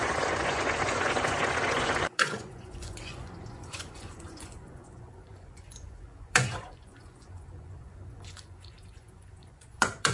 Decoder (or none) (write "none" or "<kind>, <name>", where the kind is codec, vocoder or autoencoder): vocoder, Vocos